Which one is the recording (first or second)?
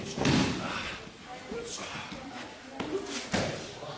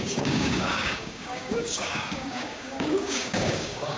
first